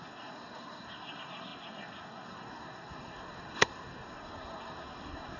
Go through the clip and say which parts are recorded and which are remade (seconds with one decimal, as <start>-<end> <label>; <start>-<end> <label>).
0.0-5.4 remade